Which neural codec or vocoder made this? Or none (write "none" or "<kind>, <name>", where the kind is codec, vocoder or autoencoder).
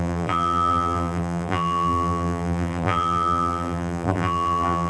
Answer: vocoder, BigVGAN v2